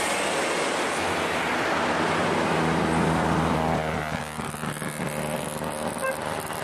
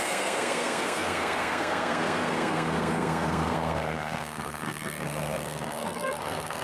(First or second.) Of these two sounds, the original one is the first